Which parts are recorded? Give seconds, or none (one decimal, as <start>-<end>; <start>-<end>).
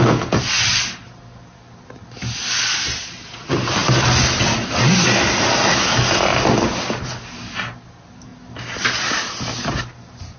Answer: 0.0-10.4